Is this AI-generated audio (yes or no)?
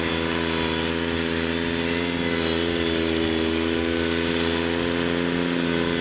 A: no